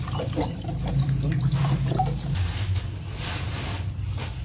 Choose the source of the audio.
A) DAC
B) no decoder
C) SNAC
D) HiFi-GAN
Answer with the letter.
B